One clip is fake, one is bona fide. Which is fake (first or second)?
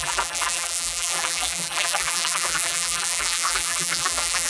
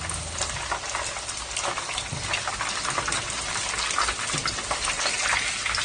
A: first